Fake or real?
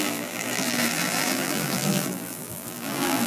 fake